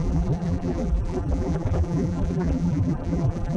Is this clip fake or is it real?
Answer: fake